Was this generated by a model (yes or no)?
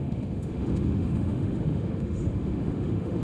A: yes